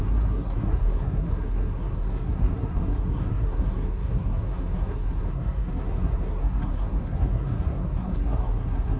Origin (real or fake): fake